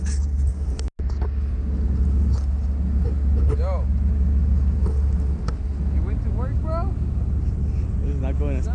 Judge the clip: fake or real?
real